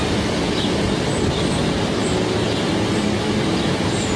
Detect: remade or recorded recorded